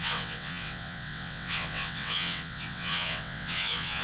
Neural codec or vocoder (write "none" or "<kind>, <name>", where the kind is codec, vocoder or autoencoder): vocoder, WaveNeXt